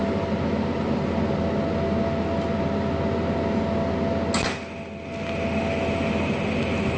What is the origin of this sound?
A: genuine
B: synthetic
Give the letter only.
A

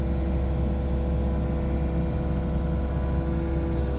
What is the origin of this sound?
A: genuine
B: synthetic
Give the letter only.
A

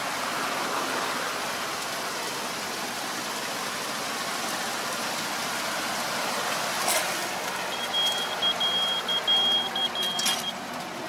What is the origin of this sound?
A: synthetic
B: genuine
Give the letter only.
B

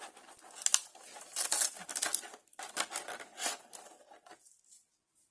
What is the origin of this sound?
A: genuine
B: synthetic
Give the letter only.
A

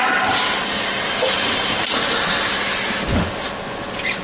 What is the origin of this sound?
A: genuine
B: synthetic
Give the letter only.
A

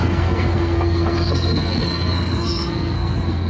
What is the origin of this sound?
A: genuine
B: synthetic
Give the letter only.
B